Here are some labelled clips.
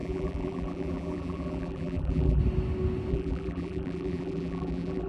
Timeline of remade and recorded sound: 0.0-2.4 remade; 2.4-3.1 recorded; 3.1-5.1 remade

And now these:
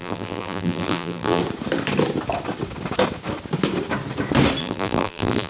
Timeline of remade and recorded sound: 0.0-1.4 remade; 1.4-4.6 recorded; 4.6-5.5 remade

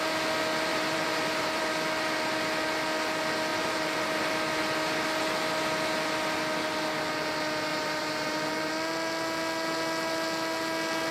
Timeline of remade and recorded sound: 0.0-0.7 recorded; 0.7-1.6 remade; 1.6-3.5 recorded; 3.5-4.4 remade; 4.4-7.7 recorded; 7.7-8.7 remade; 8.7-11.1 recorded

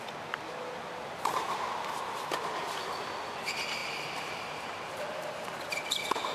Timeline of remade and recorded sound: 0.0-3.8 recorded; 3.8-6.3 remade